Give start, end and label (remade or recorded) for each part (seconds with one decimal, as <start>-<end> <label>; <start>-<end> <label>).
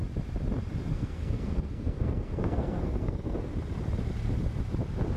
0.0-0.9 recorded; 0.9-3.5 remade; 3.5-5.2 recorded